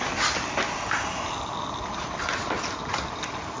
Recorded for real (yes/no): yes